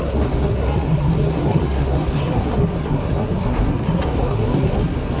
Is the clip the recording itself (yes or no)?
no